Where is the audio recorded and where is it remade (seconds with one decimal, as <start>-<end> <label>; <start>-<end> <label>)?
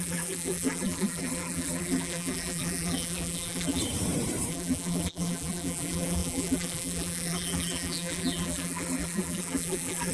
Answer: 0.0-3.8 remade; 3.8-4.5 recorded; 4.5-10.1 remade